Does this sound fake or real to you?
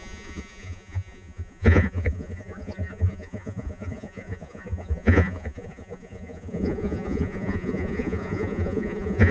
fake